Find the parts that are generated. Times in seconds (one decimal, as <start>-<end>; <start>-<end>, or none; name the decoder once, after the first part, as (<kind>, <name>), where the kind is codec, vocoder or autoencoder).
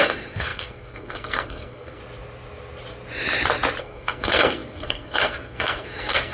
0.0-2.0 (codec, SNAC); 3.8-6.3